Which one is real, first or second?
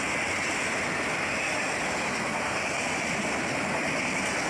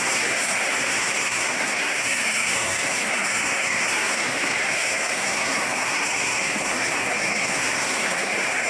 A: first